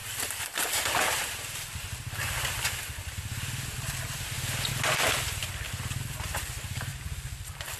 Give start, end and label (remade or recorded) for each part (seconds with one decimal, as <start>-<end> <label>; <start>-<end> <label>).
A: 0.0-4.7 remade; 4.7-6.9 recorded; 6.9-7.8 remade